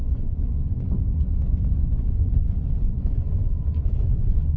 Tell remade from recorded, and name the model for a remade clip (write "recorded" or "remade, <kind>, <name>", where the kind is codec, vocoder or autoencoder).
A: remade, vocoder, Vocos